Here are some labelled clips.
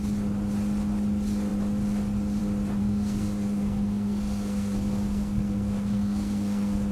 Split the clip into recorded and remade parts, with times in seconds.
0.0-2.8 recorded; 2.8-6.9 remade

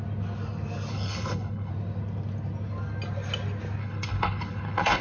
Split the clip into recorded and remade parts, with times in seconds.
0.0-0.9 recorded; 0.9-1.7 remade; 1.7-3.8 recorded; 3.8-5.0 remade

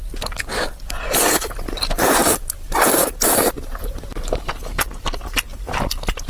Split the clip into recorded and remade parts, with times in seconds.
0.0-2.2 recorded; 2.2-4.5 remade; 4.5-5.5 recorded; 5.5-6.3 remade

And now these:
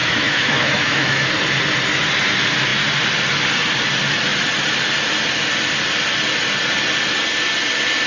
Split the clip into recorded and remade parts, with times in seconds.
0.0-1.3 remade; 1.3-8.1 recorded